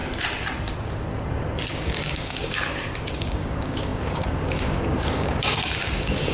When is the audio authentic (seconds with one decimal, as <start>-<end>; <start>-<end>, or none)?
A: 0.0-1.7; 2.4-3.1